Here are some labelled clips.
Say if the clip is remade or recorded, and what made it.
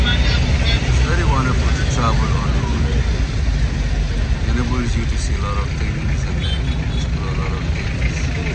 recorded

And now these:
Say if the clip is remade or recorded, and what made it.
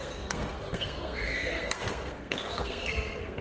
remade, codec, SNAC